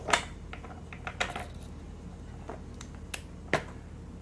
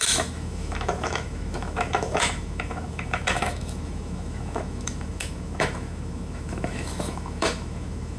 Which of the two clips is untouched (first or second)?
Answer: first